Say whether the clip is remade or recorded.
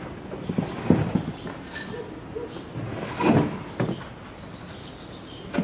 recorded